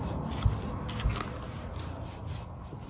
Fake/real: real